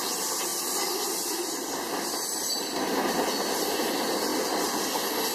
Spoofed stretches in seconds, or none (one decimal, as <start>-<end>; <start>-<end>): 0.5-3.7